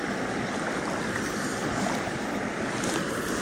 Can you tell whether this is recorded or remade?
recorded